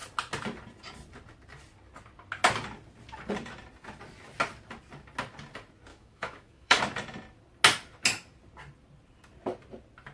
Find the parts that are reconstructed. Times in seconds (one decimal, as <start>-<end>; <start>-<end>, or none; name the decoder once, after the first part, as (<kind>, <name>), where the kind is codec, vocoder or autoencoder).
5.9-6.8 (autoencoder, DAC-VAE)